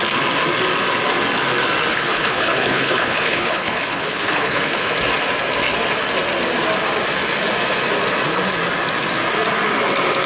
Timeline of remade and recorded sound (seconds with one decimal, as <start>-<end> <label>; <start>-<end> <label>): 0.0-1.9 recorded; 1.9-4.9 remade; 4.9-10.3 recorded